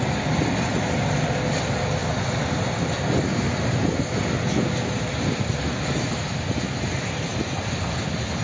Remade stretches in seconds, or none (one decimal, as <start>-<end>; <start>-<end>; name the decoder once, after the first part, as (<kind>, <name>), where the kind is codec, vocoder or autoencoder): none